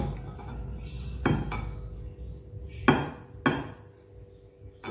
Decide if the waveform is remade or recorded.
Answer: recorded